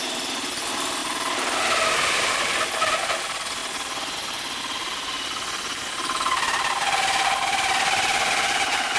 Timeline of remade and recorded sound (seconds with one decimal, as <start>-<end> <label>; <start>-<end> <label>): 0.0-9.0 recorded